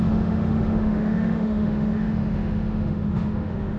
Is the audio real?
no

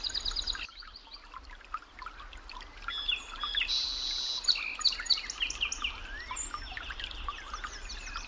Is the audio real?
yes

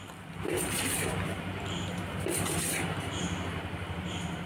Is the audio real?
yes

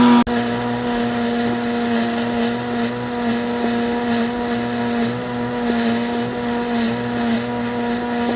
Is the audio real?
yes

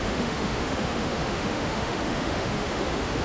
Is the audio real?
no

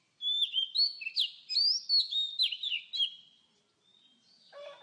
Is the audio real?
yes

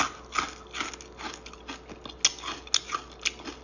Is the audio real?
yes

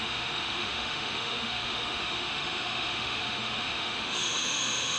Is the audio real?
no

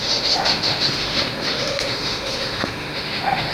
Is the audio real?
no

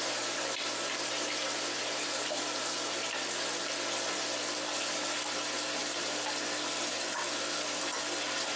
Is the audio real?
yes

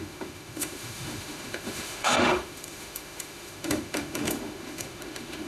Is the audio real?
no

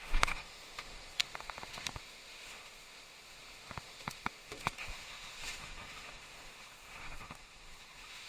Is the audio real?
no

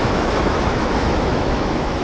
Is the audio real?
no